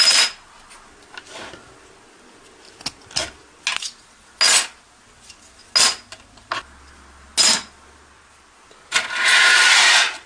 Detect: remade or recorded recorded